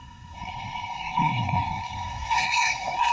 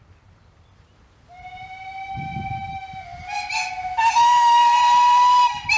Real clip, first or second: second